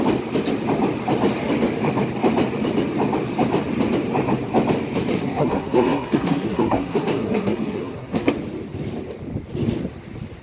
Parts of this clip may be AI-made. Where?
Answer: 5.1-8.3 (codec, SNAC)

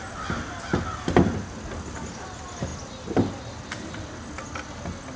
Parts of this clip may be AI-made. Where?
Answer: none